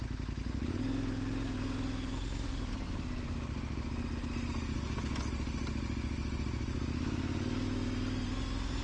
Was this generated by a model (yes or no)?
no